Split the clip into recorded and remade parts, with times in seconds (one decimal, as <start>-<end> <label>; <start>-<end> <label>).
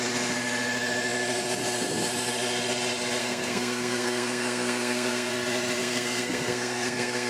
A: 0.0-3.2 recorded; 3.2-5.3 remade; 5.3-5.8 recorded; 5.8-7.3 remade